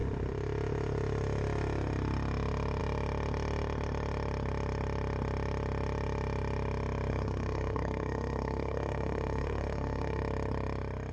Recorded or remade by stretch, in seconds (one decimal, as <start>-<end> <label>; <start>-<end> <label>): 0.0-7.1 recorded; 7.1-10.2 remade; 10.2-11.1 recorded